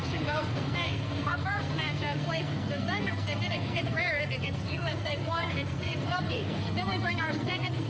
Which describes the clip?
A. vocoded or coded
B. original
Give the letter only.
A